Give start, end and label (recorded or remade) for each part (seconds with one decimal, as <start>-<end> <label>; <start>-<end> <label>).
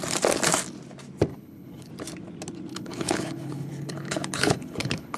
0.0-1.3 recorded; 1.3-1.9 remade; 1.9-2.7 recorded; 2.7-5.2 remade